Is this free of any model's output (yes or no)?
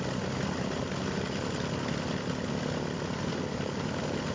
yes